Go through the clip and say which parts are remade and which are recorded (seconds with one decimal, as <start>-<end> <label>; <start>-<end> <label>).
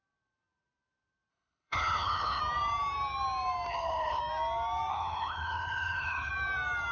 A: 0.0-1.3 recorded; 1.3-2.4 remade; 2.4-3.7 recorded; 3.7-4.2 remade; 4.2-4.9 recorded; 4.9-6.3 remade; 6.3-6.9 recorded